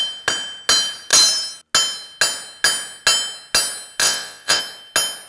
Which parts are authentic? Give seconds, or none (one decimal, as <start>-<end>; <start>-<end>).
0.0-4.0; 4.6-5.3